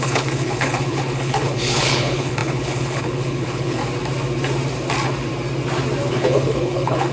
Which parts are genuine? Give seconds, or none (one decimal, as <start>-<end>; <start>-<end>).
3.8-6.1